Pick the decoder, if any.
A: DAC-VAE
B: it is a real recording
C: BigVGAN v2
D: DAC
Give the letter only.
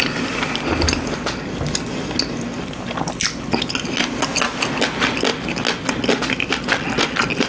B